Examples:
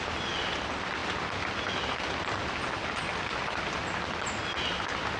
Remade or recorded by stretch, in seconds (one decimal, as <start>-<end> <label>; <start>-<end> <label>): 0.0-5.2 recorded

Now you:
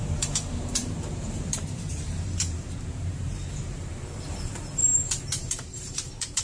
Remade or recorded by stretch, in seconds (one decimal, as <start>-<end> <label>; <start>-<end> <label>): 0.0-6.4 remade

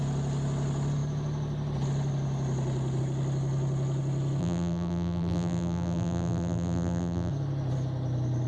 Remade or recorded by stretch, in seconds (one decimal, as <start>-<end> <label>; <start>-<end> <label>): 0.0-4.4 recorded; 4.4-7.3 remade; 7.3-8.5 recorded

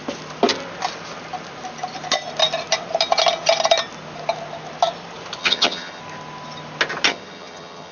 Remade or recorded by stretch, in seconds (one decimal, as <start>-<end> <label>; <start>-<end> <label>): 0.0-5.4 recorded; 5.4-6.0 remade; 6.0-7.1 recorded; 7.1-7.9 remade

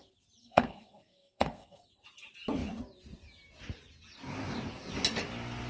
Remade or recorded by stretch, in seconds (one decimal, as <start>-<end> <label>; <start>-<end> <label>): 0.0-0.4 recorded; 0.4-1.9 remade; 1.9-5.7 recorded

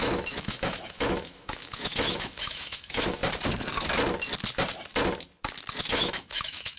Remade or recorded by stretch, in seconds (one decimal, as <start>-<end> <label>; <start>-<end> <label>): 0.0-3.2 remade; 3.2-5.8 recorded; 5.8-6.8 remade

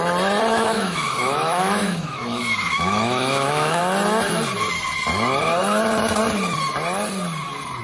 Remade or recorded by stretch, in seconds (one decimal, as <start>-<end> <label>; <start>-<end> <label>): 0.0-0.5 recorded; 0.5-3.8 remade; 3.8-7.8 recorded